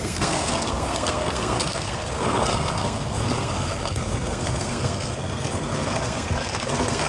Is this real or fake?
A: fake